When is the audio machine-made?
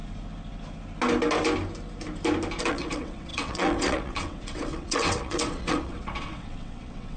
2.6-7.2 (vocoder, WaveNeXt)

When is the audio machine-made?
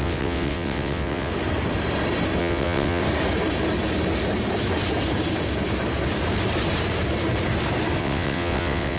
0.0-1.3 (vocoder, WaveNeXt); 2.4-3.0; 8.0-9.0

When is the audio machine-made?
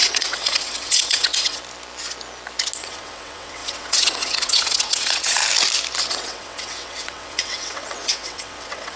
0.0-1.6 (vocoder, WaveNeXt); 2.8-5.4; 6.1-9.0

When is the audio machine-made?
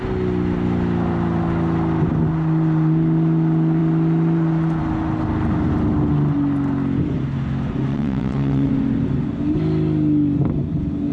7.9-8.7 (vocoder, WaveNeXt)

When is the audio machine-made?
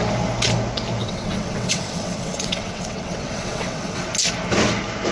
1.0-4.1 (vocoder, WaveNeXt)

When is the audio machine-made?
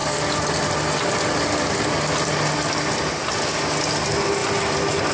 none